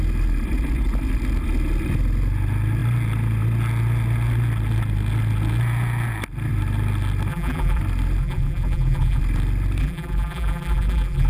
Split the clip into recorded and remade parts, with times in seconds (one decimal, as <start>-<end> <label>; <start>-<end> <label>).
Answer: 0.0-7.3 recorded; 7.3-7.8 remade; 7.8-8.2 recorded; 8.2-9.2 remade; 9.2-9.8 recorded; 9.8-11.3 remade